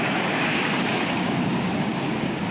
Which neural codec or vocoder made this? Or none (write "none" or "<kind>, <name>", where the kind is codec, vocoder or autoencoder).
codec, DAC